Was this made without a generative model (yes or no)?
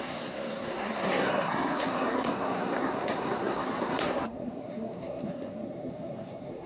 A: no